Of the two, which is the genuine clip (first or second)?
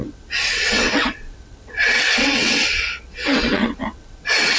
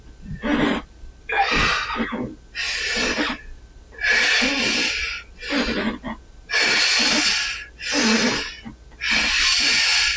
second